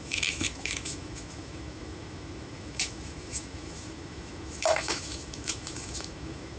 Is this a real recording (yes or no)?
no